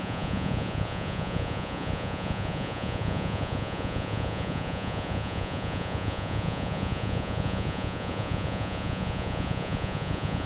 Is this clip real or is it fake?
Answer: fake